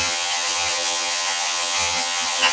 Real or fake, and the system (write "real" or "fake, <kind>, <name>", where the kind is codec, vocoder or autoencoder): fake, vocoder, HiFi-GAN